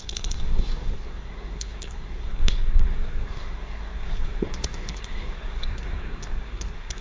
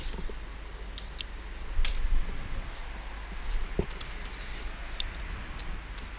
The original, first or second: second